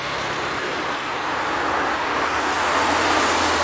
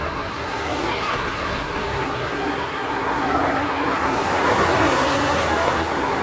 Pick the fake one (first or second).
second